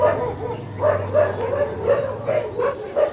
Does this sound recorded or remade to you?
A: recorded